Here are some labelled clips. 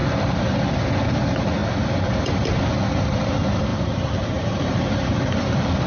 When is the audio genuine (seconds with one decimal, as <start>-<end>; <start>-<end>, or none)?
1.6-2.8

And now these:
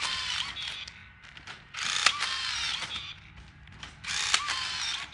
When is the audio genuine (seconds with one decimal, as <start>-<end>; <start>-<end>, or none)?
0.0-5.1

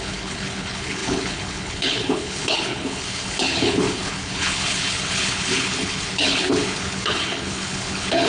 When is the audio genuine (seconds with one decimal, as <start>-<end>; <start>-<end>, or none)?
none

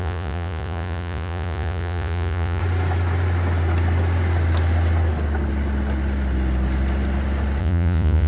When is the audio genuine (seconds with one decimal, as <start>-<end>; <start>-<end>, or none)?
2.6-7.6